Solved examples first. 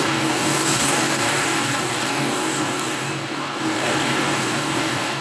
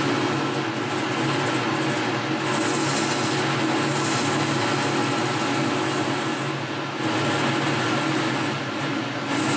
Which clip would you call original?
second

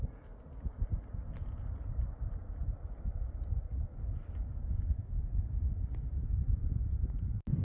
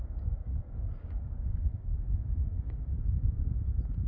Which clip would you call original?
first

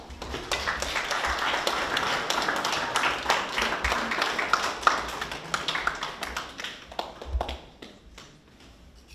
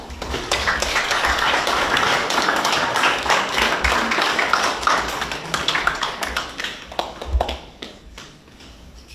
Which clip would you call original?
first